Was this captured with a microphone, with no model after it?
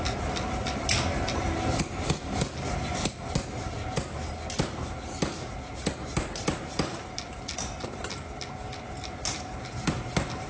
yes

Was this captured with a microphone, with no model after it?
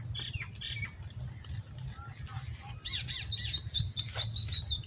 yes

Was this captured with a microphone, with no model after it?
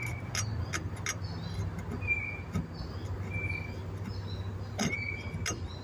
yes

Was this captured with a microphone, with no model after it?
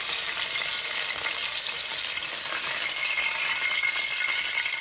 yes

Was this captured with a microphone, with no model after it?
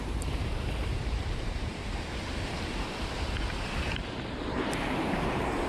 no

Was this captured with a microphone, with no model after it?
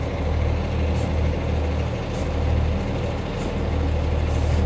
yes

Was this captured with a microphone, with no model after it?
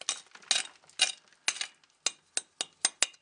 yes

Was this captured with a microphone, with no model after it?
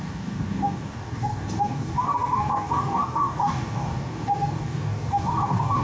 no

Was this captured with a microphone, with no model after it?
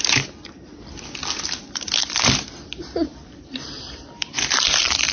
yes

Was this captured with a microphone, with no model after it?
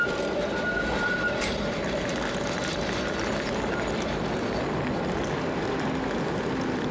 yes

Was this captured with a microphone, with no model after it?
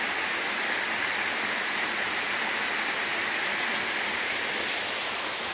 yes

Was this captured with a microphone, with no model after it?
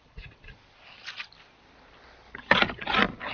yes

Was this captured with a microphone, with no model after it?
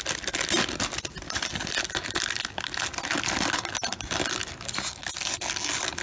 yes